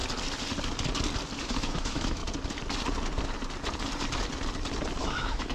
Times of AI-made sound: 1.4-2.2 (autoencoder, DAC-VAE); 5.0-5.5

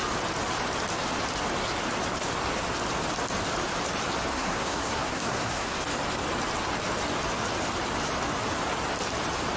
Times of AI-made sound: 4.3-5.8 (codec, SNAC)

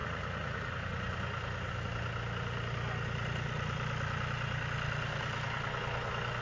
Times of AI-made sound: 0.0-0.7 (vocoder, Vocos)

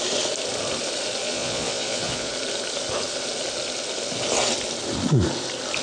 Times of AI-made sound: 1.2-2.3 (vocoder, Vocos)

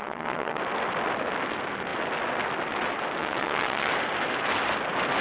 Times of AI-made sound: 0.0-0.6 (vocoder, WaveNeXt); 3.2-3.9

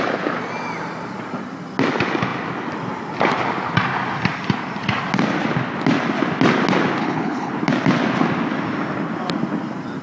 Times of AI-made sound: 7.0-7.5 (codec, HILCodec)

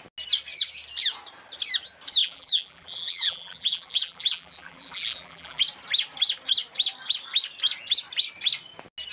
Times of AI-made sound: 2.2-5.6 (vocoder, BigVGAN v2)